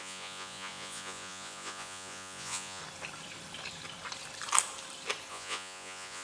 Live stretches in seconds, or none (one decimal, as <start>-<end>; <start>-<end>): 2.8-5.3